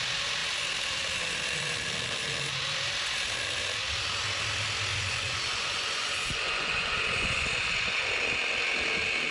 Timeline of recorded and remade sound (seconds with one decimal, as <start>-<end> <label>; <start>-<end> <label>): 0.0-4.9 recorded; 4.9-8.1 remade; 8.1-9.3 recorded